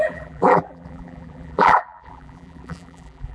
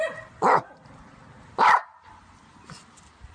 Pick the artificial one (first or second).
first